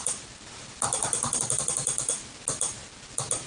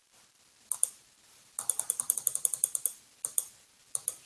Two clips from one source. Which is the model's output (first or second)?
second